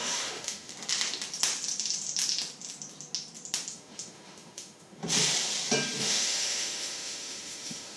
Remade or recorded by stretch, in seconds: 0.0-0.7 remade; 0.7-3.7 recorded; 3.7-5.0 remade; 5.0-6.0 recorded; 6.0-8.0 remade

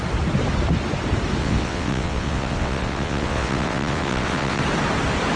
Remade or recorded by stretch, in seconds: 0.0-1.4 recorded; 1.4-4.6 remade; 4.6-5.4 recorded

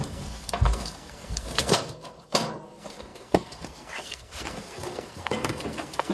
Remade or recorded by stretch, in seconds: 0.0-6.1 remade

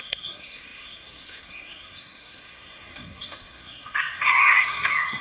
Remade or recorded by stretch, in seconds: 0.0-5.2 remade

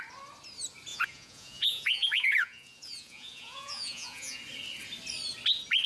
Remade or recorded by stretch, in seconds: 0.0-0.9 recorded; 0.9-4.4 remade; 4.4-5.9 recorded